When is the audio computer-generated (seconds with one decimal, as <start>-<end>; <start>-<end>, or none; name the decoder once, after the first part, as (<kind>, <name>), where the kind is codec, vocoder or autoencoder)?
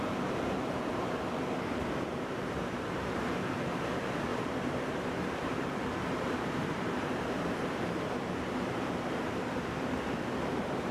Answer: 0.0-10.9 (vocoder, BigVGAN v2)